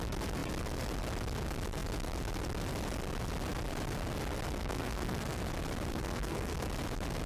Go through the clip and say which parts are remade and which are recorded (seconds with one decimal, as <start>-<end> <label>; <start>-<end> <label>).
0.0-4.6 recorded; 4.6-5.4 remade; 5.4-5.9 recorded; 5.9-6.7 remade; 6.7-7.3 recorded